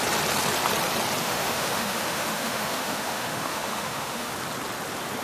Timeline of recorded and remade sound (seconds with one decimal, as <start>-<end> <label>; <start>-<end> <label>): 0.0-1.2 recorded; 1.2-4.3 remade; 4.3-5.2 recorded